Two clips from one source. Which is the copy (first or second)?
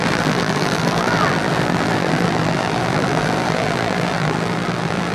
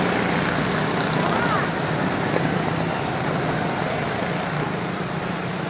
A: first